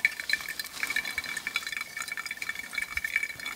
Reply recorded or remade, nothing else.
recorded